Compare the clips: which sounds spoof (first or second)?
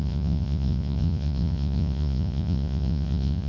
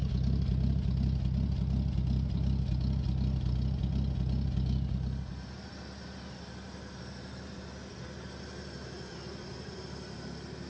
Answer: first